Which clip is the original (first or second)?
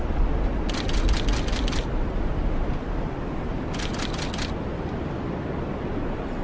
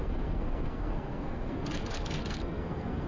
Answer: first